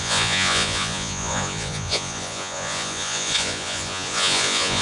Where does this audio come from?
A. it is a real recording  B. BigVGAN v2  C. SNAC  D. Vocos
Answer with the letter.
D